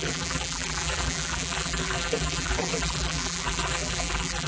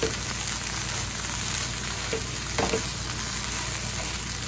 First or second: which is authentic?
second